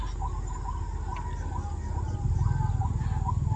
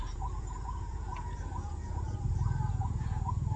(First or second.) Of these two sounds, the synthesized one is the second